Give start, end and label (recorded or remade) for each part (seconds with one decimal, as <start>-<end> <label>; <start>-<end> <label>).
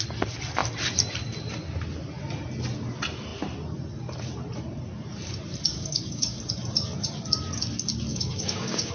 0.0-5.7 recorded; 5.7-6.4 remade; 6.4-8.1 recorded; 8.1-8.9 remade